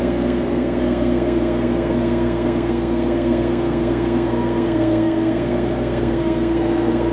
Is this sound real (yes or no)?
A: no